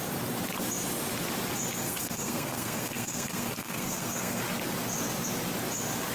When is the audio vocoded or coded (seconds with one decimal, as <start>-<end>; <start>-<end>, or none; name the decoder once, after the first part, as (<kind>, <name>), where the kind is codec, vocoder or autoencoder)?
1.8-4.4 (codec, SNAC)

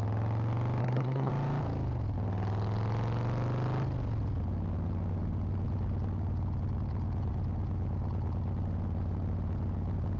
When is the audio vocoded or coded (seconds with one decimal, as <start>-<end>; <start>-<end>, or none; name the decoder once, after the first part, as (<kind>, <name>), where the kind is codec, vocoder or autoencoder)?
0.8-1.3 (codec, SNAC)

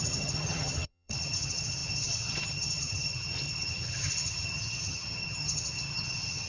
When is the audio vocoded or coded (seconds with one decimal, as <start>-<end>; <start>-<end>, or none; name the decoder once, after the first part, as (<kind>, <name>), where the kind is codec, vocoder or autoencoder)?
0.0-6.5 (vocoder, HiFi-GAN)

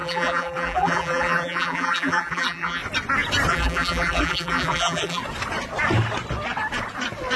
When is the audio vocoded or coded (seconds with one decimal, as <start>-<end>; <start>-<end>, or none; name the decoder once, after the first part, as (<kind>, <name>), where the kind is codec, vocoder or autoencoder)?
0.0-2.8 (vocoder, BigVGAN v2); 3.5-5.2

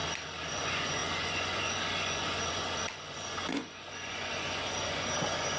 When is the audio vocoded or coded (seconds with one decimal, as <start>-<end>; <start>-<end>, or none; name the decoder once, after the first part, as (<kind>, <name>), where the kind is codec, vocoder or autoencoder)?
0.5-5.6 (vocoder, Vocos)

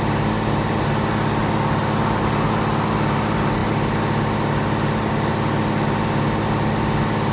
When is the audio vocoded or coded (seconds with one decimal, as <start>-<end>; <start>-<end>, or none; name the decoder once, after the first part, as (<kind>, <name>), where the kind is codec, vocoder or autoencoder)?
none